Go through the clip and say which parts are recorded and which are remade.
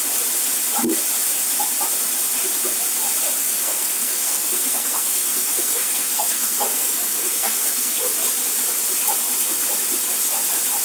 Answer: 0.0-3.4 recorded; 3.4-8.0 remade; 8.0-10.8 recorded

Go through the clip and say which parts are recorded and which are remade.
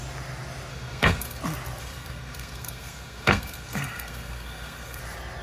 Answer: 0.0-0.7 recorded; 0.7-1.4 remade; 1.4-1.8 recorded; 1.8-5.0 remade; 5.0-5.4 recorded